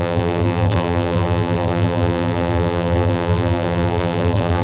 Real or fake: fake